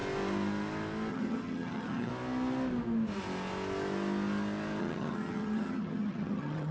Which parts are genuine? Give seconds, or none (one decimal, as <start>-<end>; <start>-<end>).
0.0-1.1; 2.1-4.8